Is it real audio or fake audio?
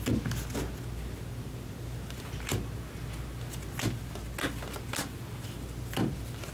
real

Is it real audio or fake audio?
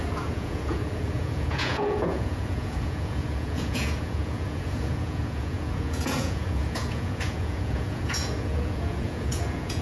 fake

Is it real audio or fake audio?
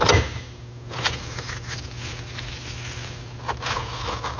real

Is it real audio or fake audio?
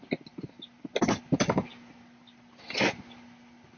real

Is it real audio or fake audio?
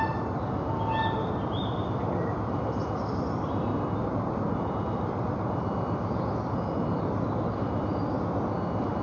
real